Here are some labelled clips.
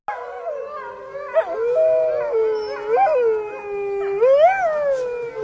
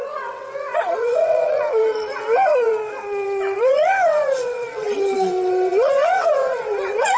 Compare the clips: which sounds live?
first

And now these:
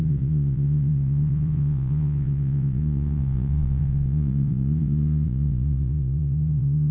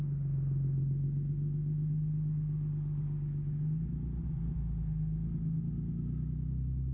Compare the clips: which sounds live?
second